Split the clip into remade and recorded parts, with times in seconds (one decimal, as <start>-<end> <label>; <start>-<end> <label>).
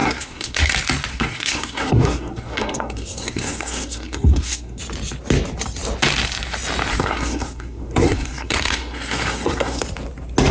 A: 0.0-0.7 remade; 0.7-1.1 recorded; 1.1-4.8 remade; 4.8-6.9 recorded; 6.9-9.8 remade; 9.8-10.5 recorded